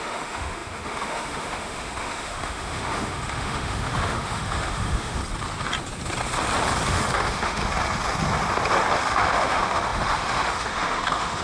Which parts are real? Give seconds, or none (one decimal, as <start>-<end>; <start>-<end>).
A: 5.2-6.9; 7.6-9.0